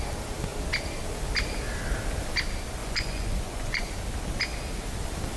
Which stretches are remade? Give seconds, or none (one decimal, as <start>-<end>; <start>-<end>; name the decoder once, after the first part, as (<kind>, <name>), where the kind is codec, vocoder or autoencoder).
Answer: 2.8-3.9 (vocoder, Vocos)